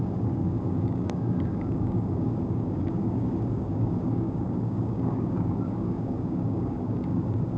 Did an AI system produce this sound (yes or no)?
yes